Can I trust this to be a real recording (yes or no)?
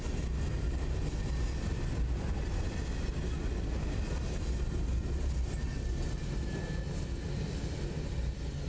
yes